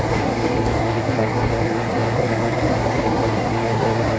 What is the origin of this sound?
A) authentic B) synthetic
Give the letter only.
B